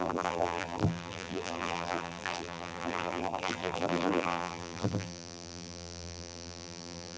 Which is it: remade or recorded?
remade